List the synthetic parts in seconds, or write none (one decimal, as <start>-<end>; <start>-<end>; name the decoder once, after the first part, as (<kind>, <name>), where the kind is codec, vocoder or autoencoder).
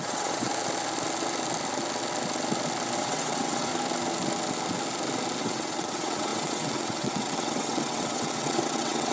0.0-0.5 (vocoder, WaveNeXt); 3.0-3.7; 5.4-9.1